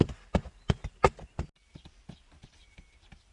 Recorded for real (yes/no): yes